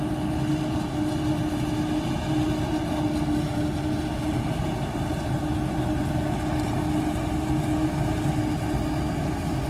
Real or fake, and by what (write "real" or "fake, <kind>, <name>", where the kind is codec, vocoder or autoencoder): real